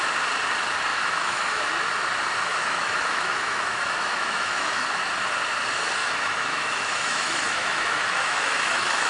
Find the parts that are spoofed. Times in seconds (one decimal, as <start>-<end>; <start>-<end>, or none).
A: 0.9-1.8; 2.5-4.8; 6.0-9.1